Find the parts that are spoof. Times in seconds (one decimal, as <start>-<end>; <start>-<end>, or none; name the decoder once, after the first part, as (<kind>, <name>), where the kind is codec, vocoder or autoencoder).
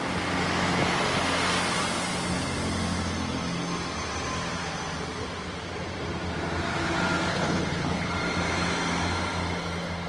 7.3-8.1 (codec, HILCodec)